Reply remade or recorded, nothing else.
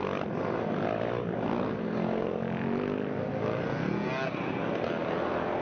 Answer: recorded